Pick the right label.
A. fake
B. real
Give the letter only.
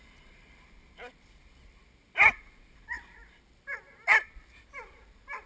B